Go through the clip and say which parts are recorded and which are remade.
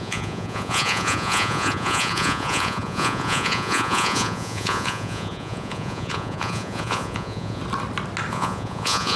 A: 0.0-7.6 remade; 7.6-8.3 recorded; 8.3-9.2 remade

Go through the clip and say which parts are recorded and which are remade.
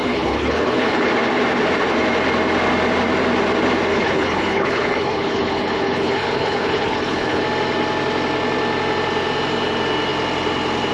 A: 0.0-1.1 remade; 1.1-3.9 recorded; 3.9-7.4 remade; 7.4-10.9 recorded